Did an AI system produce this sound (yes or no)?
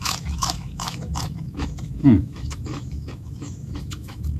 yes